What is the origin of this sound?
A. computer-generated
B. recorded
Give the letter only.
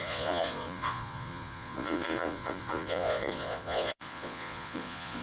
A